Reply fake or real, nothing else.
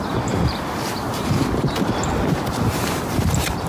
fake